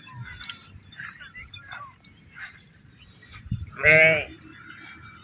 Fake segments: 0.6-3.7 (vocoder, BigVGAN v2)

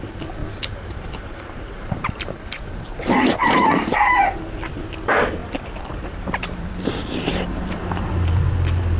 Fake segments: 0.4-4.6 (vocoder, BigVGAN v2); 5.4-6.8; 7.3-8.1